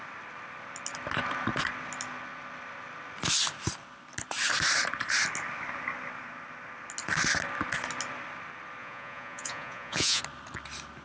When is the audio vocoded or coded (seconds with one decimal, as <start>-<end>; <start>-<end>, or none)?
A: 8.8-10.2